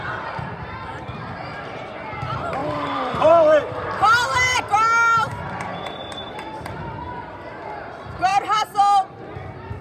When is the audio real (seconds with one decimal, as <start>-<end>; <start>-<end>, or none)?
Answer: 0.0-2.6; 4.6-9.8